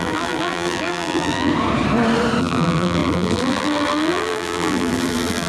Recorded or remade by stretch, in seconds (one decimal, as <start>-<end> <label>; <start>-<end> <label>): 0.0-1.5 remade; 1.5-2.4 recorded; 2.4-5.5 remade